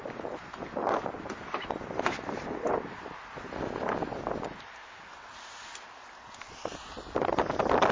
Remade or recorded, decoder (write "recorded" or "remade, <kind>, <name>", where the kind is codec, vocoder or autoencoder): recorded